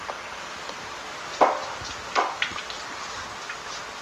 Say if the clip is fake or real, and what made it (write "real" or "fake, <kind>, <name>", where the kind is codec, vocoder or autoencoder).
real